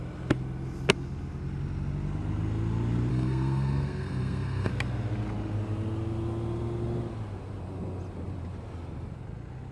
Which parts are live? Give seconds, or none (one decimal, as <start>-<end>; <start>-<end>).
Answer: 0.0-3.1; 4.7-9.7